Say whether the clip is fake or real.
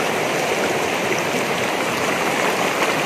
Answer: real